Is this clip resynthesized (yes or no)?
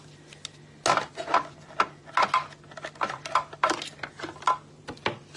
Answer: no